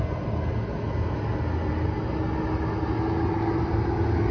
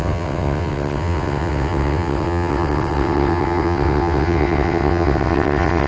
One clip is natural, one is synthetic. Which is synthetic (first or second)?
second